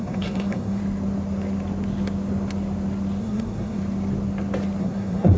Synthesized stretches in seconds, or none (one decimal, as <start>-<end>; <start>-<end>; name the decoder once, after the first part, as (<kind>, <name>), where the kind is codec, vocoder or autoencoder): 0.0-0.8 (codec, SNAC); 3.2-3.8; 4.8-5.4